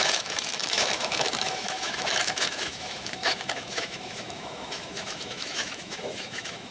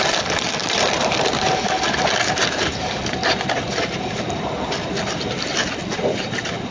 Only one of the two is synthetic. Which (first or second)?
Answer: first